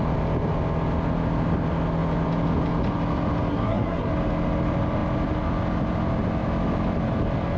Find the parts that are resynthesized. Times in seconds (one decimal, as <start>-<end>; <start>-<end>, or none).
3.5-4.1